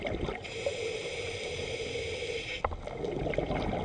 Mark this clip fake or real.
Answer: real